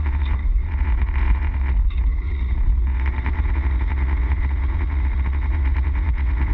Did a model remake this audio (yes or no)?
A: yes